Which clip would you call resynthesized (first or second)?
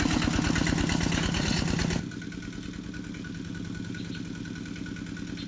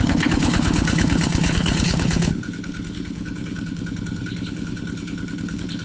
second